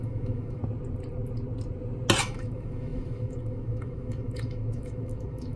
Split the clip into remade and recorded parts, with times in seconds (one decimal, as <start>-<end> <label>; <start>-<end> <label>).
0.0-0.6 remade; 0.6-2.2 recorded; 2.2-5.6 remade